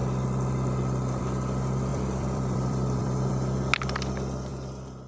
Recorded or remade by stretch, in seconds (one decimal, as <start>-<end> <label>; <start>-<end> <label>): 0.0-1.9 recorded; 1.9-3.3 remade; 3.3-4.5 recorded; 4.5-5.1 remade